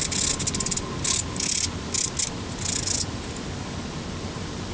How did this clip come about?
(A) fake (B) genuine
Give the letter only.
B